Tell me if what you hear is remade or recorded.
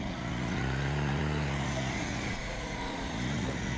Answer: remade